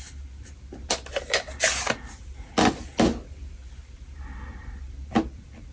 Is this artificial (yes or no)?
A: no